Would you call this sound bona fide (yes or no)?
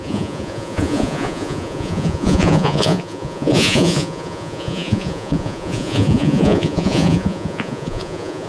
no